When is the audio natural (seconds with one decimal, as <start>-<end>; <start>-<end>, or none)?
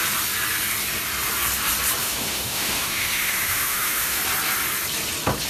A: 0.0-2.0; 4.2-5.5